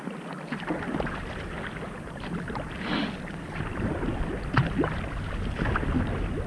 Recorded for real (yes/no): yes